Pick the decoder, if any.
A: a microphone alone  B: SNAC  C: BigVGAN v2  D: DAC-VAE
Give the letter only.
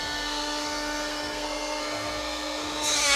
B